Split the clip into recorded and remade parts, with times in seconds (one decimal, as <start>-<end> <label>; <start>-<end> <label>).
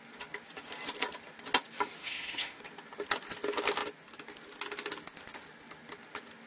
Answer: 0.0-2.0 recorded; 2.0-2.6 remade; 2.6-6.5 recorded